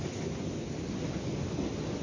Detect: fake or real real